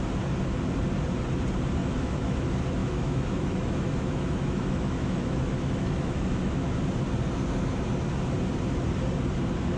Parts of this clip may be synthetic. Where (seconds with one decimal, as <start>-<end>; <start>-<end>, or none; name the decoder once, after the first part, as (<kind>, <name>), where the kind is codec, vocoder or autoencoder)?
1.8-2.3 (autoencoder, DAC-VAE); 2.8-6.8